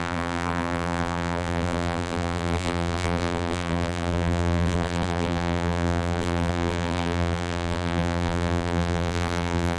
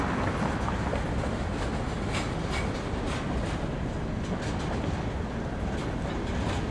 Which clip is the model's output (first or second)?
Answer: first